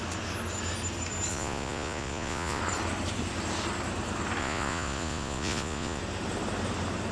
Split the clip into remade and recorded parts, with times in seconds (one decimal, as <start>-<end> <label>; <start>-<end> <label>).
0.0-1.3 recorded; 1.3-2.6 remade; 2.6-4.4 recorded; 4.4-6.0 remade; 6.0-7.1 recorded